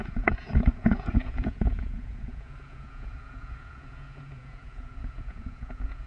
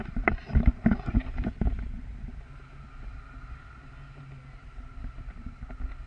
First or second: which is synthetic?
first